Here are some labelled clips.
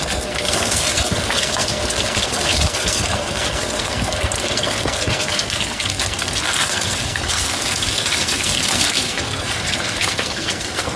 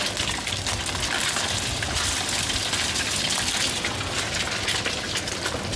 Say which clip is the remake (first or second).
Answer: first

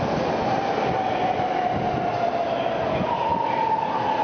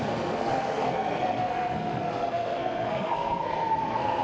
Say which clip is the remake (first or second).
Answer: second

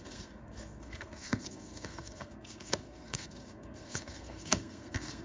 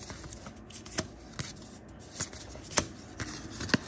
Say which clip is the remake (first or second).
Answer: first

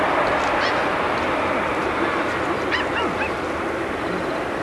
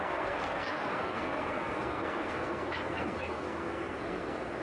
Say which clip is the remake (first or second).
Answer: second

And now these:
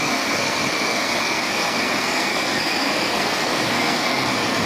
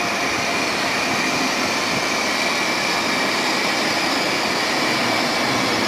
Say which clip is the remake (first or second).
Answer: first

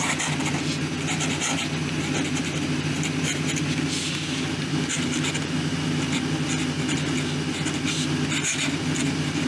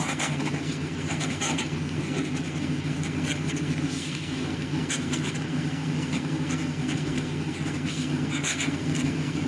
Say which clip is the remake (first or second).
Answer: second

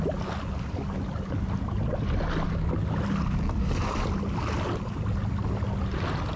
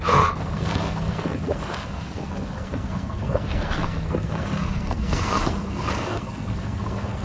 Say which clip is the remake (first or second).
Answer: second